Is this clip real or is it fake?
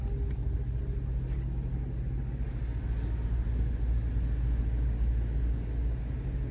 real